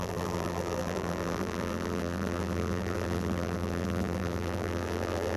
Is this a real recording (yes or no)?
no